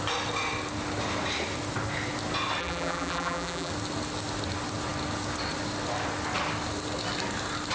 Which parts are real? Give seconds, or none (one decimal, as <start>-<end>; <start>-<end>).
0.0-2.6; 3.7-7.7